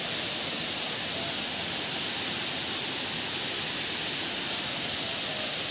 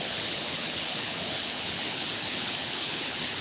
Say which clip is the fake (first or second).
second